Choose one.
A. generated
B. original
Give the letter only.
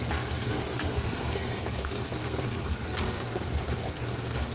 A